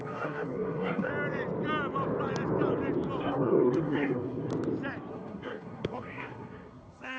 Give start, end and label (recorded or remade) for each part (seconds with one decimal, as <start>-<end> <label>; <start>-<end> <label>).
0.0-1.1 remade; 1.1-3.2 recorded; 3.2-4.5 remade; 4.5-5.1 recorded; 5.1-7.2 remade